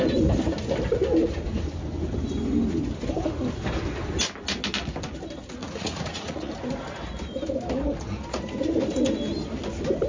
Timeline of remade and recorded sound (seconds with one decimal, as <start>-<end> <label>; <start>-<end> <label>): 0.0-5.6 recorded; 5.6-6.5 remade; 6.5-10.1 recorded